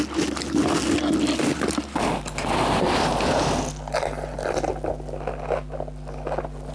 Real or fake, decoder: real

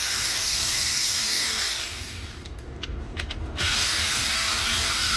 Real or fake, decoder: fake, codec, DAC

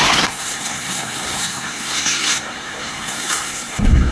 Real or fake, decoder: fake, codec, SNAC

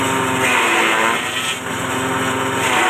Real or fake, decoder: real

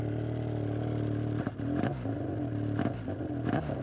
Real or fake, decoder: real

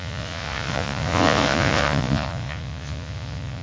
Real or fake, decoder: fake, vocoder, Vocos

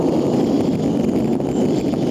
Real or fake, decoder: real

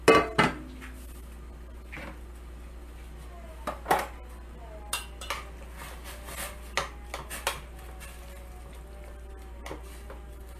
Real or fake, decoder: real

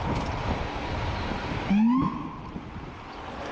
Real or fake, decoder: real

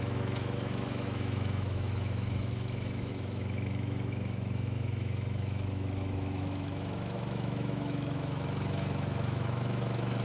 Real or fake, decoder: fake, autoencoder, DAC-VAE